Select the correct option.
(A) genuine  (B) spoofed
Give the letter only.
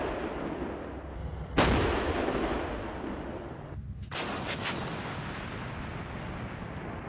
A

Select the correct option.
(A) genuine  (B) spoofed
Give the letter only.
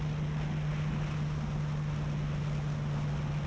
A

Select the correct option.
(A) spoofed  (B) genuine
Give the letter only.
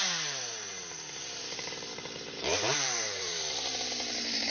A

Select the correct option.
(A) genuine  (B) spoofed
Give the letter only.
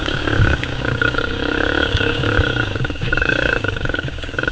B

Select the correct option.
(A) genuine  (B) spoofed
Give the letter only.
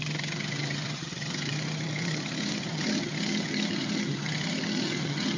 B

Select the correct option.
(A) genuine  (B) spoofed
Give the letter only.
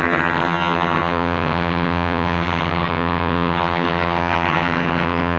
B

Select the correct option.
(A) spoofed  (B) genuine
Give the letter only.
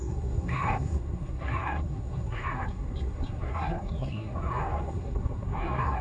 A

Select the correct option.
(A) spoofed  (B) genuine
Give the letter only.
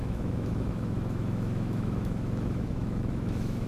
A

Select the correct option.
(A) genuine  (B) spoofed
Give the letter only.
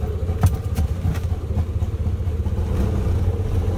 A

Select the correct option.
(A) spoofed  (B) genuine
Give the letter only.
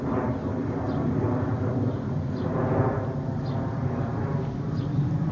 B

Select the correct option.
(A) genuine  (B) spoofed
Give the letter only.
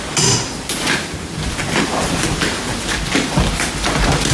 A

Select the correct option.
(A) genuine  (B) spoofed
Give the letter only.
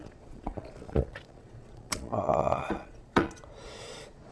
B